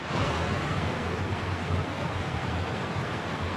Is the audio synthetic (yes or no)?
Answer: yes